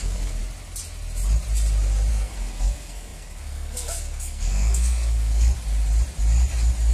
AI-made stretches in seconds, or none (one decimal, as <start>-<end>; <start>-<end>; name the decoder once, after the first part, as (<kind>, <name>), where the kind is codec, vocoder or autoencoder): 0.0-0.4 (codec, SNAC); 2.1-5.5